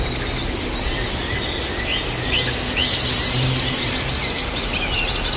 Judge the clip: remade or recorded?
recorded